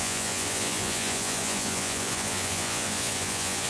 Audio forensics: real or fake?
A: fake